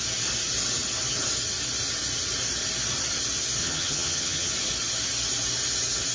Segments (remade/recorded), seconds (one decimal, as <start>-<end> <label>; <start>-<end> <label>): 0.0-3.6 recorded; 3.6-4.5 remade; 4.5-6.1 recorded